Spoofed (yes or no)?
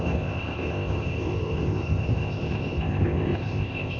yes